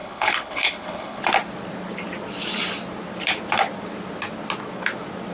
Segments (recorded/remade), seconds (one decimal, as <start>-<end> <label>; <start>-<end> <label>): 0.0-1.2 remade; 1.2-5.3 recorded